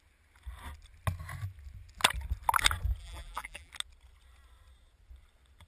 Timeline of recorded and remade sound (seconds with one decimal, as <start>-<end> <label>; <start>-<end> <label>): 0.0-3.0 recorded; 3.0-3.7 remade; 3.7-5.7 recorded